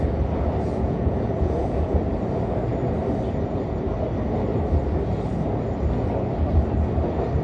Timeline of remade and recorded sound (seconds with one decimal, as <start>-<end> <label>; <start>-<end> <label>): 0.0-0.7 recorded; 0.7-2.0 remade; 2.0-7.4 recorded